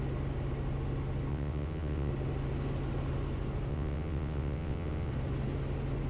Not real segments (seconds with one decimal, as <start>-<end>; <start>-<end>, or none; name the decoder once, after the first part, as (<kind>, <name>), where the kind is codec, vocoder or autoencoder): 1.3-2.1 (vocoder, WaveNeXt); 3.7-5.1